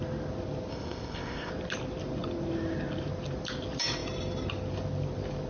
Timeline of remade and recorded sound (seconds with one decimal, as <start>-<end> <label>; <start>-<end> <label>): 0.0-0.7 recorded; 0.7-1.5 remade; 1.5-5.5 recorded